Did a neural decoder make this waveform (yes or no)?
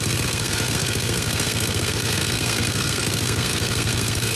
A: yes